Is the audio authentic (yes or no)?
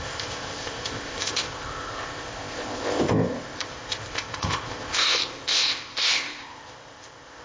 no